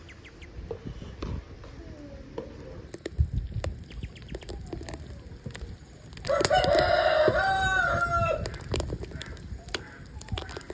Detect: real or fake real